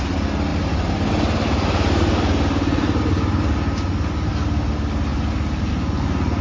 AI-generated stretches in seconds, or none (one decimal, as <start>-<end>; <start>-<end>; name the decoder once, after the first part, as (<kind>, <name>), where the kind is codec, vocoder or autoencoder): none